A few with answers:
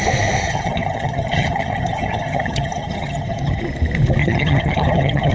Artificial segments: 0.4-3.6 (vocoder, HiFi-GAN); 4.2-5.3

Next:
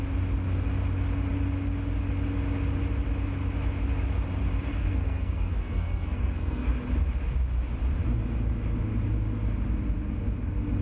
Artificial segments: 4.7-6.7 (codec, SNAC)